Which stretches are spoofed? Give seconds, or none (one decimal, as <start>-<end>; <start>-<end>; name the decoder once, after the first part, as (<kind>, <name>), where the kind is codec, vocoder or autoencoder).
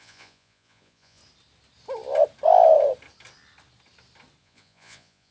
0.0-1.2 (vocoder, Vocos); 4.4-5.3